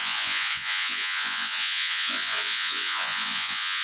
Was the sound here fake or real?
fake